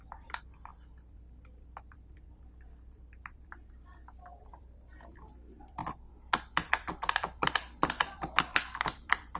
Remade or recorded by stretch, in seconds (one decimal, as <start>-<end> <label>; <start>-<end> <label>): 0.0-5.8 remade; 5.8-6.7 recorded; 6.7-9.4 remade